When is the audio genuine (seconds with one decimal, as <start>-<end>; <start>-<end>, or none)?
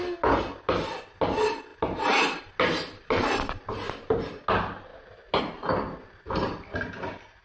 0.0-7.4